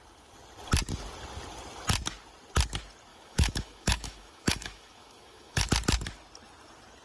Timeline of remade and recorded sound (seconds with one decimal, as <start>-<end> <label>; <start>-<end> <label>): 0.0-3.1 recorded; 3.1-5.7 remade; 5.7-7.0 recorded